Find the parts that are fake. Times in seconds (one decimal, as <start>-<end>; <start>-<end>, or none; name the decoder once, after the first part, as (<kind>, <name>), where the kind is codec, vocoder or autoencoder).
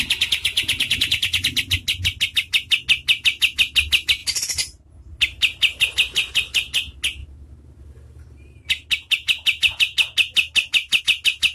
none